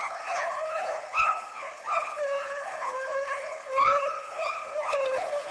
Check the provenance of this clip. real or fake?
fake